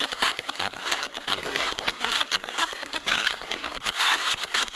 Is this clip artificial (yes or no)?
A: yes